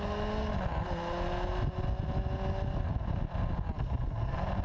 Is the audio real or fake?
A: real